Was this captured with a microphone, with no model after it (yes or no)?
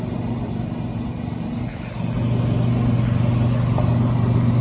yes